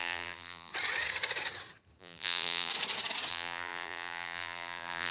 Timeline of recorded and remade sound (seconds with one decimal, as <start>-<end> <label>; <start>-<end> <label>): 0.0-0.7 remade; 0.7-2.0 recorded; 2.0-2.7 remade; 2.7-3.3 recorded; 3.3-5.1 remade